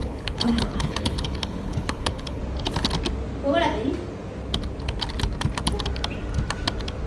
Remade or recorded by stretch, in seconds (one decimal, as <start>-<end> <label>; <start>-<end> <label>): 0.0-2.4 remade; 2.4-7.1 recorded